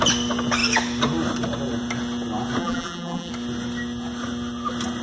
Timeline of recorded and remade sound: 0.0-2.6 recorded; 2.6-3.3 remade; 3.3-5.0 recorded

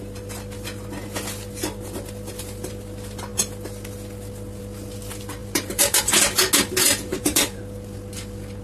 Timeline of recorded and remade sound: 0.0-5.4 recorded; 5.4-6.0 remade; 6.0-7.1 recorded; 7.1-7.6 remade; 7.6-8.6 recorded

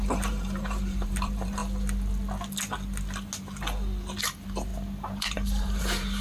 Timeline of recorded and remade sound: 0.0-1.6 remade; 1.6-4.2 recorded; 4.2-4.7 remade; 4.7-5.2 recorded; 5.2-6.2 remade

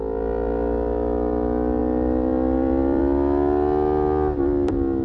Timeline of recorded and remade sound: 0.0-1.8 recorded; 1.8-3.0 remade; 3.0-5.0 recorded

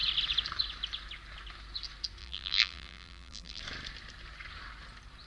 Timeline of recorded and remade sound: 0.0-2.2 recorded; 2.2-3.6 remade; 3.6-5.3 recorded

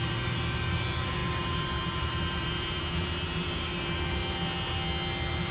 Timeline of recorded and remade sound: 0.0-4.2 remade; 4.2-5.5 recorded